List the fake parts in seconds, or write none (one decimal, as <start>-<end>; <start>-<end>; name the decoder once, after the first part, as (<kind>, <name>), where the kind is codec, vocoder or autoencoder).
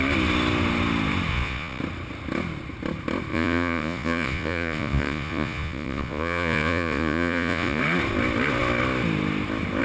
1.3-1.8 (vocoder, Vocos); 3.3-7.8